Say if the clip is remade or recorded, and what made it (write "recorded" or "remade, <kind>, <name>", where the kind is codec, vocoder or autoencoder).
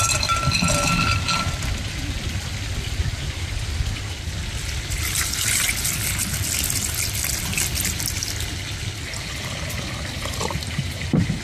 recorded